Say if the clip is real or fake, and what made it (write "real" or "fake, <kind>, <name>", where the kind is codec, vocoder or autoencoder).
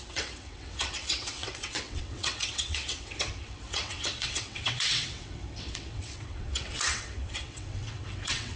fake, vocoder, WaveNeXt